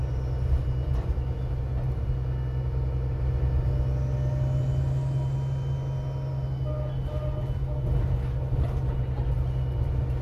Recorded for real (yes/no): yes